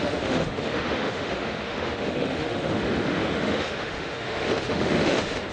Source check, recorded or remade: remade